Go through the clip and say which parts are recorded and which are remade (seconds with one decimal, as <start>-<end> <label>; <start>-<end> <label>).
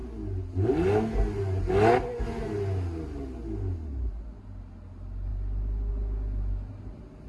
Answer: 0.0-7.3 recorded